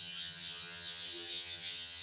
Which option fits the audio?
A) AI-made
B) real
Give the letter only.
A